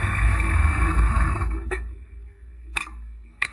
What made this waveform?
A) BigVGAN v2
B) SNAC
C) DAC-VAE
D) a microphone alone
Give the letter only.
B